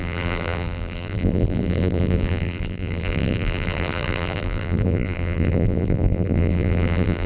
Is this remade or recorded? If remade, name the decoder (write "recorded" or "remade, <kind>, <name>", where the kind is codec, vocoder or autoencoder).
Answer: remade, vocoder, BigVGAN v2